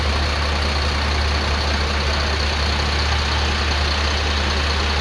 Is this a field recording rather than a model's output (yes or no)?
yes